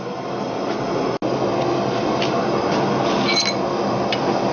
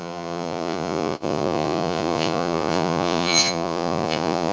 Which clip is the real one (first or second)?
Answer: first